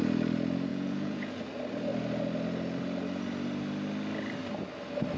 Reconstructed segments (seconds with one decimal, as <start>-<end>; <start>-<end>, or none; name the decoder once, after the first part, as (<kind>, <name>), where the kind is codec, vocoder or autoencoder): 0.7-1.4 (vocoder, Vocos)